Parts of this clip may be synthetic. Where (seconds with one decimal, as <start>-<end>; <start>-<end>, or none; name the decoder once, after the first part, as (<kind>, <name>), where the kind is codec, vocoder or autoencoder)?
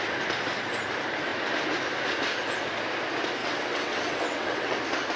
3.4-4.8 (vocoder, WaveNeXt)